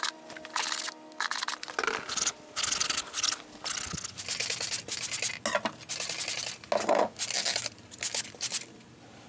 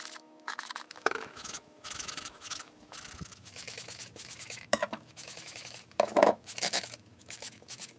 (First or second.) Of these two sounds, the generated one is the second